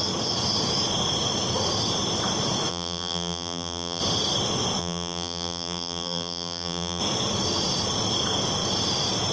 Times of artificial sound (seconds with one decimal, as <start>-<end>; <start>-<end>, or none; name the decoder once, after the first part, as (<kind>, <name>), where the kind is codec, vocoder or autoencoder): 2.7-4.0 (vocoder, BigVGAN v2); 4.8-7.0